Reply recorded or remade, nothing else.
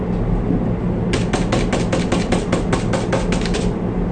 recorded